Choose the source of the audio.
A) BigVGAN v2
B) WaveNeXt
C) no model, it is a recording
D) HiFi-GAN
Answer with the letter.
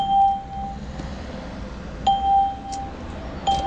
C